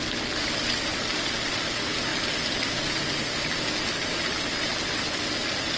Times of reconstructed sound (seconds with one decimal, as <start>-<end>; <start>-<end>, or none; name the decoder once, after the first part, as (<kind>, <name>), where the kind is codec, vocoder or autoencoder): none